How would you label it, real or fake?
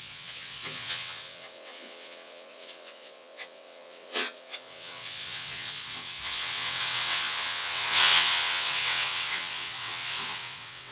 fake